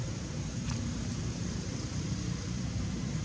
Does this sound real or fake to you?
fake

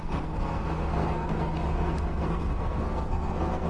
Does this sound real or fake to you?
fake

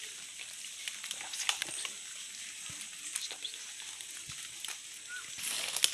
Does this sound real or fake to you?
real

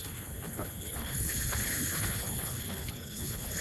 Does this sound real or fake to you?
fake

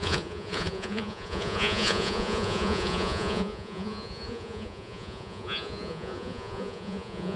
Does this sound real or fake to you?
fake